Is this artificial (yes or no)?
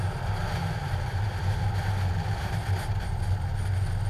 no